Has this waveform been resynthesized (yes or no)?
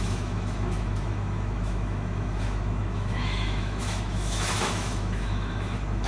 yes